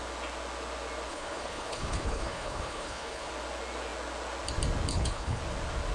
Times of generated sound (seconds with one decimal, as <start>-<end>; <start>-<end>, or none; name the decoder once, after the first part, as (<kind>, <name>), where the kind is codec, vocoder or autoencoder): 1.1-3.3 (codec, HILCodec); 4.9-5.4

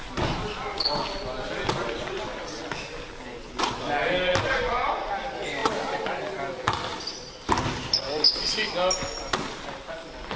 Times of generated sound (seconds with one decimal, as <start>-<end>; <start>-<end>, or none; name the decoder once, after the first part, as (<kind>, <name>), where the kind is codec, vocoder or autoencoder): none